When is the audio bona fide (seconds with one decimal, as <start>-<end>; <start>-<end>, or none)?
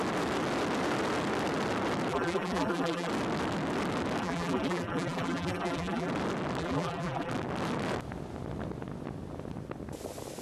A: 0.0-2.1; 3.1-4.2; 6.1-6.6; 7.3-10.4